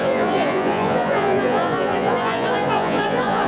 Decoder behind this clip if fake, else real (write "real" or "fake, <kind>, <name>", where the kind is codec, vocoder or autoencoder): fake, vocoder, Vocos